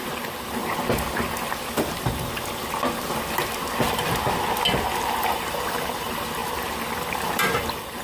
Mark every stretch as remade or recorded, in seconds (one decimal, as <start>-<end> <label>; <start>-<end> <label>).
0.0-0.6 remade; 0.6-5.0 recorded; 5.0-6.4 remade; 6.4-7.0 recorded; 7.0-8.0 remade